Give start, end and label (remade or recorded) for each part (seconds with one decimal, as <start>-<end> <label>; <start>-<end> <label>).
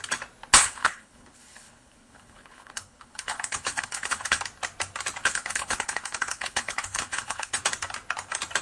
0.0-0.6 recorded; 0.6-4.4 remade; 4.4-5.2 recorded; 5.2-7.6 remade; 7.6-8.6 recorded